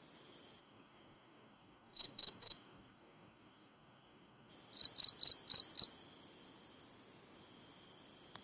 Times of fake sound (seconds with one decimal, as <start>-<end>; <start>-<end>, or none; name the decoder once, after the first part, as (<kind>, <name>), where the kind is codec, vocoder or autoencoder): 0.6-4.5 (codec, DAC)